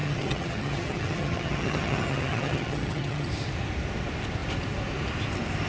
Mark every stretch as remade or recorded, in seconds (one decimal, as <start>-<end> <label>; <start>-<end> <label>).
0.0-3.3 remade; 3.3-5.7 recorded

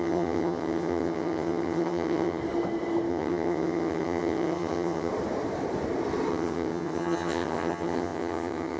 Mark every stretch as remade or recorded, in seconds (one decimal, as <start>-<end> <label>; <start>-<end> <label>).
0.0-2.4 remade; 2.4-3.1 recorded; 3.1-5.1 remade; 5.1-6.3 recorded; 6.3-8.8 remade

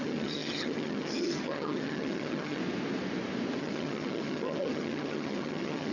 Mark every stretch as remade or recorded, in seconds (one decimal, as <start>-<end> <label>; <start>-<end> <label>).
0.0-2.6 remade; 2.6-3.6 recorded; 3.6-5.9 remade

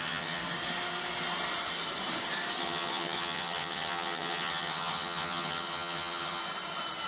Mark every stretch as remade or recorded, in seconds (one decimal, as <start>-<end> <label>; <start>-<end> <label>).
0.0-0.4 remade; 0.4-2.6 recorded; 2.6-6.4 remade; 6.4-7.1 recorded

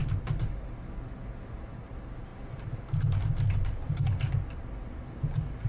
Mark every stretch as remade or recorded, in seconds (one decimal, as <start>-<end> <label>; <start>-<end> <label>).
0.0-5.7 recorded

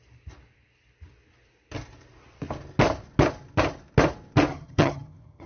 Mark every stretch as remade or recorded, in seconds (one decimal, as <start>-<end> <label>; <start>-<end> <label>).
0.0-4.5 recorded; 4.5-5.5 remade

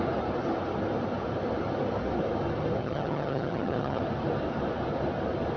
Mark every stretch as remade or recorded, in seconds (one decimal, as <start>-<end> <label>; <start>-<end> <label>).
0.0-2.8 recorded; 2.8-4.0 remade; 4.0-5.6 recorded

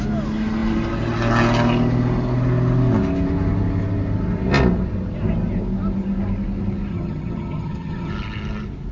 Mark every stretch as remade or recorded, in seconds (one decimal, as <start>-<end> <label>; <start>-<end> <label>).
0.0-6.9 recorded; 6.9-8.1 remade; 8.1-8.9 recorded